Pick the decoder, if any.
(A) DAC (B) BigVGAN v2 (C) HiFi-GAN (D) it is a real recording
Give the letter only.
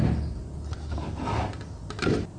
D